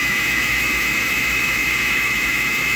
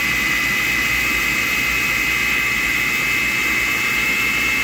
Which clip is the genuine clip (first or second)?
second